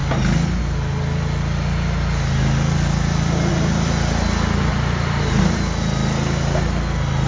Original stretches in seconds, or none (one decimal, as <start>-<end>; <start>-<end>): 0.0-4.7; 5.4-7.3